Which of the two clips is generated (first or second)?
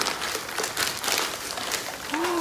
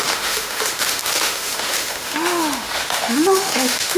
second